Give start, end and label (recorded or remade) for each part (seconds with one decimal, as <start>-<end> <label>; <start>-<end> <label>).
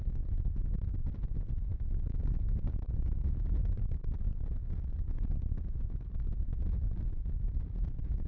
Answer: 0.0-8.3 recorded